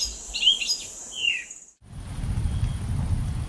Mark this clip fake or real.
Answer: real